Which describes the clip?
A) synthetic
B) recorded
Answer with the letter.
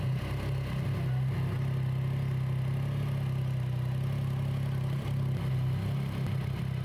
B